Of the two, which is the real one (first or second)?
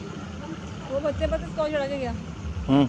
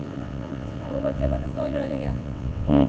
first